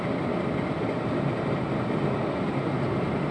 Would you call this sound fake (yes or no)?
no